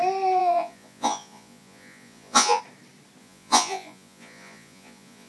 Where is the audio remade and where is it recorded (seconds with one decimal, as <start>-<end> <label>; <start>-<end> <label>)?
0.0-0.4 recorded; 0.4-2.6 remade; 2.6-3.2 recorded; 3.2-5.3 remade